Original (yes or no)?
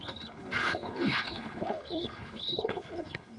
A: no